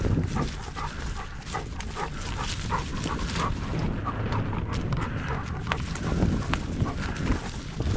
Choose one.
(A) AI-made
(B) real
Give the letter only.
B